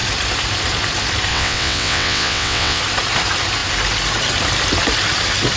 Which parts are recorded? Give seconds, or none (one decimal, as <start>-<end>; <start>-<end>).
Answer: 0.0-1.3; 2.8-5.6